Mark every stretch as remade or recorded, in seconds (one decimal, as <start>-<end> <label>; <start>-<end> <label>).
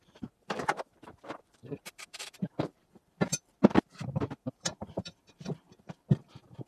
0.0-6.7 remade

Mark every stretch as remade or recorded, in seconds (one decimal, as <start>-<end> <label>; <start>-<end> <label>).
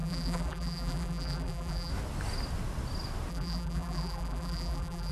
0.0-1.9 remade; 1.9-3.3 recorded; 3.3-5.1 remade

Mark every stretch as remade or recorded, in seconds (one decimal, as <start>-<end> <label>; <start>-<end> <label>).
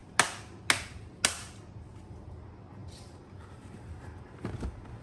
0.0-2.8 recorded; 2.8-4.2 remade; 4.2-5.0 recorded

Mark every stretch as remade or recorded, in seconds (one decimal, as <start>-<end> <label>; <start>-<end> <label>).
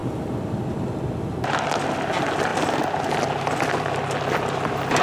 0.0-5.0 recorded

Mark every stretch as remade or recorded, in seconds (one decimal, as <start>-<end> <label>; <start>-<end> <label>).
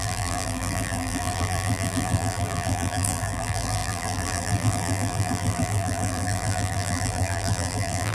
0.0-8.1 remade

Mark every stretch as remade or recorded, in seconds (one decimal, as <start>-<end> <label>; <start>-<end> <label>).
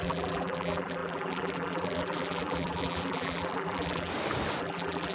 0.0-4.1 remade; 4.1-4.6 recorded; 4.6-5.1 remade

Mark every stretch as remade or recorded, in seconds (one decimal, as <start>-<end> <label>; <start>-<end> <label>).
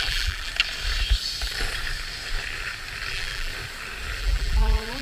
0.0-0.5 remade; 0.5-3.1 recorded; 3.1-3.5 remade; 3.5-4.2 recorded; 4.2-5.0 remade